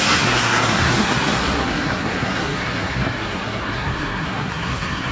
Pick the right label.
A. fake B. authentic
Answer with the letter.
A